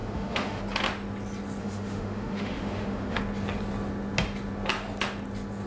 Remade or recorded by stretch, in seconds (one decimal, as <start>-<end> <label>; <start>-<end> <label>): 0.0-0.6 remade; 0.6-1.6 recorded; 1.6-3.2 remade; 3.2-5.7 recorded